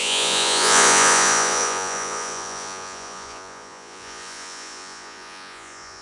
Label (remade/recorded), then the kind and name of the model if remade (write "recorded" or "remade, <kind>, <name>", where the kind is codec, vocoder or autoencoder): remade, vocoder, Vocos